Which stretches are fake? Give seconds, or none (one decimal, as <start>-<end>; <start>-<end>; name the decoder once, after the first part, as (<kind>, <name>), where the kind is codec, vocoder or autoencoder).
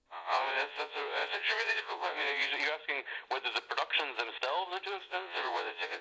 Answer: 0.0-2.5 (vocoder, WaveNeXt); 5.0-6.0